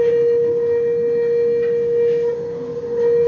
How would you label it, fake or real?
real